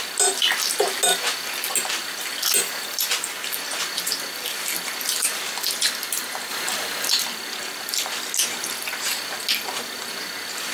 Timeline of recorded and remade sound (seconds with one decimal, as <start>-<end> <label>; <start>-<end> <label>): 0.0-10.7 recorded

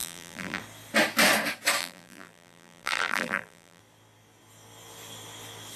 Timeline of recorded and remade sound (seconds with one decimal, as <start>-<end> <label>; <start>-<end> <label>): 0.0-0.6 remade; 0.6-1.8 recorded; 1.8-3.8 remade; 3.8-5.8 recorded

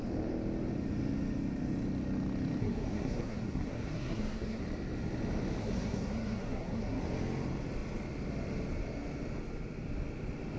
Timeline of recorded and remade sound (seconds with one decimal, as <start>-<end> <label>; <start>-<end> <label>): 0.0-2.6 recorded; 2.6-4.6 remade; 4.6-5.6 recorded; 5.6-7.0 remade; 7.0-10.6 recorded

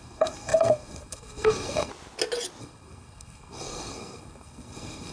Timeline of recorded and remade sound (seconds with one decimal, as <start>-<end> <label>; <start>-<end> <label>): 0.0-1.9 remade; 1.9-2.6 recorded; 2.6-5.1 remade